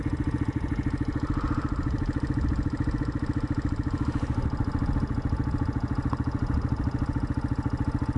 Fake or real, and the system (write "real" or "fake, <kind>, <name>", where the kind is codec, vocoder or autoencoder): real